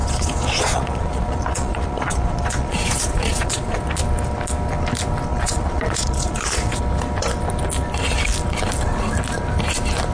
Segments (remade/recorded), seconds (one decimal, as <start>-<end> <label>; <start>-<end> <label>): 0.0-3.8 remade; 3.8-5.3 recorded; 5.3-6.8 remade; 6.8-10.1 recorded